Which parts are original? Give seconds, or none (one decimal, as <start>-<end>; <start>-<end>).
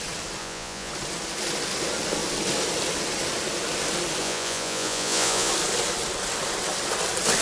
0.0-0.4; 0.9-4.2; 5.5-7.4